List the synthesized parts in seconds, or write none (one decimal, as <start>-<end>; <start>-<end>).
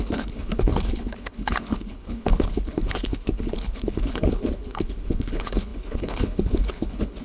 0.0-7.2